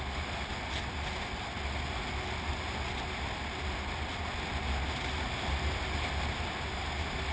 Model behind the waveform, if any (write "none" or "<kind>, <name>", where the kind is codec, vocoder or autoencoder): none